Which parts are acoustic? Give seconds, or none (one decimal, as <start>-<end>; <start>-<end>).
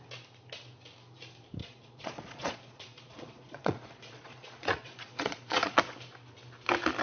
0.0-1.6; 5.8-7.0